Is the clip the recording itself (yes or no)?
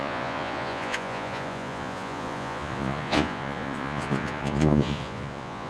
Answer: no